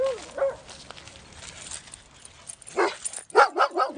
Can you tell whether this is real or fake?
real